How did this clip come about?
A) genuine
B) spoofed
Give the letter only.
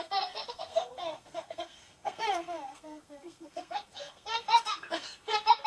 B